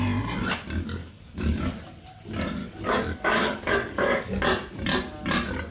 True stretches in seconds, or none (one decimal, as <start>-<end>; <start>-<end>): 0.0-1.0; 1.7-2.6; 4.4-5.7